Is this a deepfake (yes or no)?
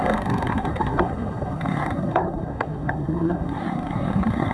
yes